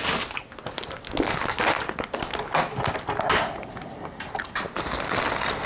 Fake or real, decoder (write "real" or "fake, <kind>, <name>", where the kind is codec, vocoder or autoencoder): real